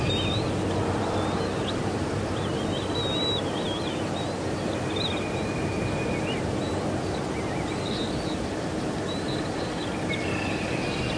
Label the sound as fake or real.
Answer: real